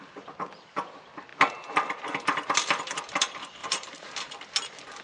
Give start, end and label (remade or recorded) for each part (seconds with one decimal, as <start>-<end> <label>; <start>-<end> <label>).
0.0-3.6 recorded; 3.6-4.1 remade; 4.1-5.0 recorded